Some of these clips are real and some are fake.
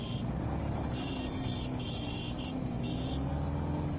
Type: real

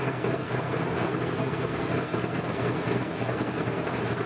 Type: fake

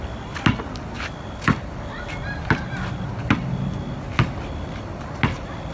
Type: real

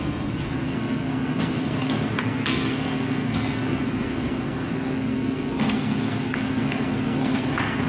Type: fake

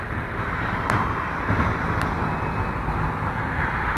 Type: real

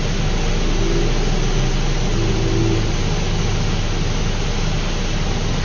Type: real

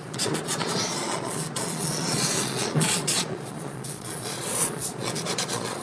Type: fake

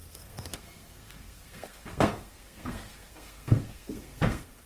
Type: fake